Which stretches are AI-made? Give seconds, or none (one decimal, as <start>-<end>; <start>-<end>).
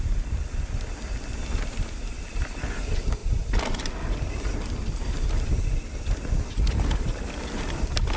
none